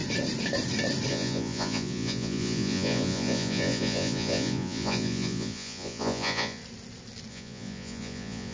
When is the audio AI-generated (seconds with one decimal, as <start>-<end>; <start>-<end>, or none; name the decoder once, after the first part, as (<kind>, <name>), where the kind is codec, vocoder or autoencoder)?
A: 1.1-6.6 (vocoder, Vocos); 7.3-8.5